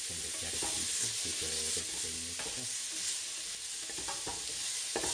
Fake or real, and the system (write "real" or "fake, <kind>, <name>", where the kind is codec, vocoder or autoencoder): real